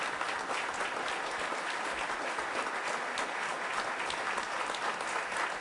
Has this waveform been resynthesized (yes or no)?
no